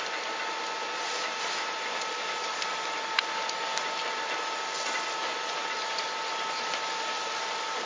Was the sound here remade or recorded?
recorded